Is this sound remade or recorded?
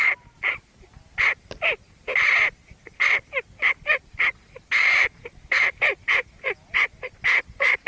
recorded